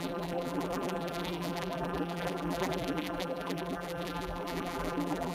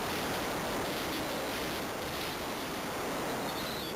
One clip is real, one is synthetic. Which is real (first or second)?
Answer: second